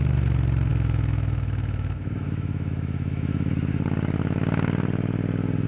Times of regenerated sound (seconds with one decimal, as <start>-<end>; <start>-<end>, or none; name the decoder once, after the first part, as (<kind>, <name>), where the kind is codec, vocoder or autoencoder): 0.7-3.5 (autoencoder, DAC-VAE)